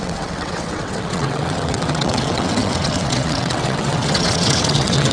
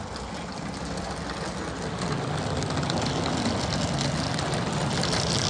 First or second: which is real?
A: second